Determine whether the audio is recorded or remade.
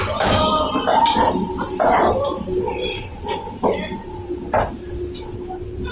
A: recorded